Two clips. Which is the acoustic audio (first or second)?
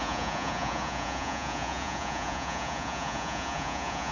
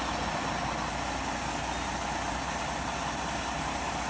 second